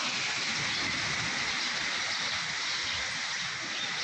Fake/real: real